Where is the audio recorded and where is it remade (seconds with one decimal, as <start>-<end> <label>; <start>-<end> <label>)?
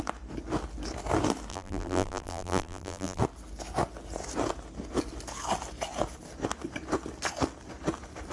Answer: 0.0-1.5 recorded; 1.5-3.2 remade; 3.2-8.3 recorded